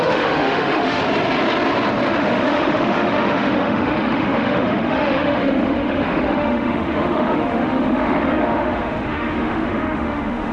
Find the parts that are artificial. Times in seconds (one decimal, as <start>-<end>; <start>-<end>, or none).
0.0-1.0; 2.2-10.5